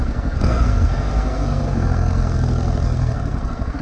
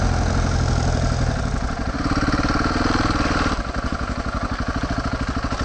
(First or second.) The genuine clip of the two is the second